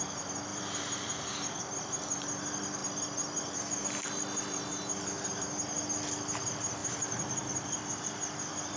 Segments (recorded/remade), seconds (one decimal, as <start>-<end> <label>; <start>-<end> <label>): 0.0-6.8 recorded; 6.8-8.0 remade; 8.0-8.8 recorded